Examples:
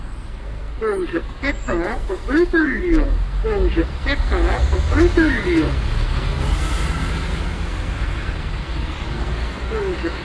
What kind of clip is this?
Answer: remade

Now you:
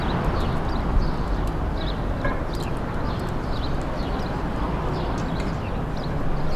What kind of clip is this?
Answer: recorded